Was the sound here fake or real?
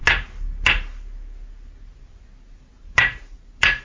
real